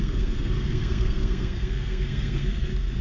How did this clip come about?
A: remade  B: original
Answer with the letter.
A